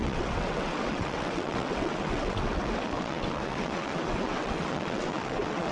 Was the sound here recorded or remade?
remade